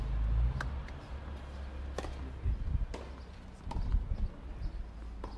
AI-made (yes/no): no